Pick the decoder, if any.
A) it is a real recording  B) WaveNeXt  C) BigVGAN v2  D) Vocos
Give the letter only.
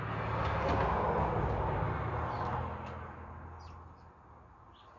A